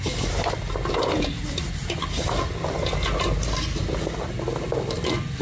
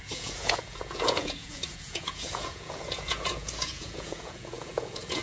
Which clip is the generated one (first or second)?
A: second